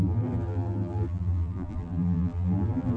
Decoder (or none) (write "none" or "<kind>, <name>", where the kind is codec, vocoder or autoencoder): vocoder, BigVGAN v2